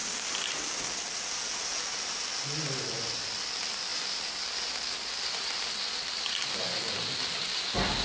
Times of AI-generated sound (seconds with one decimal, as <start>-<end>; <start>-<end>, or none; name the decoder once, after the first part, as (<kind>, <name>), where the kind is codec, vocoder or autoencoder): 2.8-8.0 (vocoder, BigVGAN v2)